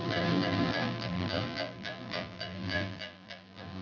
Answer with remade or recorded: remade